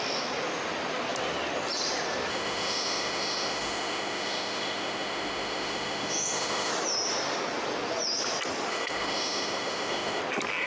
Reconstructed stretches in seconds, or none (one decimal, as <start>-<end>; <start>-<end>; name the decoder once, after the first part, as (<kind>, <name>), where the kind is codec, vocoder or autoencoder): 2.3-6.7 (autoencoder, DAC-VAE); 8.7-10.2

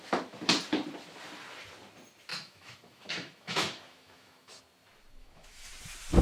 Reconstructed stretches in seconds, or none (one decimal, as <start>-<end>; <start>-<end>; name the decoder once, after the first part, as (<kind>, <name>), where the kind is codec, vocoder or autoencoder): 2.3-4.6 (autoencoder, DAC-VAE); 5.2-5.7

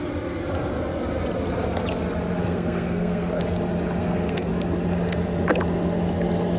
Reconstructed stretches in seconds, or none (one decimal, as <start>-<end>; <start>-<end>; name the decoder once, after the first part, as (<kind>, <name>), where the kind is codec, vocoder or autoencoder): 2.4-3.4 (codec, SNAC); 4.0-4.5

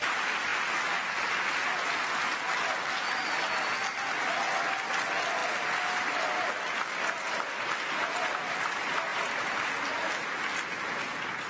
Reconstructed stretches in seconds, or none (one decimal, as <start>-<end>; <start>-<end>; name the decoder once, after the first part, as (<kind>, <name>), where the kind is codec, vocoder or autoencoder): 9.1-9.7 (vocoder, BigVGAN v2)

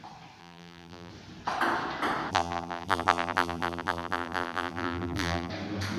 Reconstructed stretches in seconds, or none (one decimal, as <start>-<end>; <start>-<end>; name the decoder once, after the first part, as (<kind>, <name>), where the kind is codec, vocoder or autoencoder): 0.4-1.1 (vocoder, BigVGAN v2); 2.3-5.5

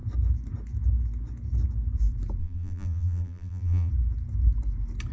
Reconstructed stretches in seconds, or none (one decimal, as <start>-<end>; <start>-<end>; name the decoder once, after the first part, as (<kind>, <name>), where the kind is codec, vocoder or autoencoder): 2.4-3.9 (vocoder, BigVGAN v2)

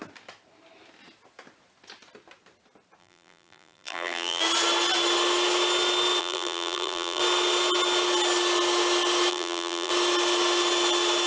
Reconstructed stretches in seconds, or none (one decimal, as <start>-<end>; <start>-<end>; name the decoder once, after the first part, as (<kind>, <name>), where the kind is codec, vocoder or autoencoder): 3.0-4.4 (vocoder, BigVGAN v2); 6.2-7.2; 9.3-9.9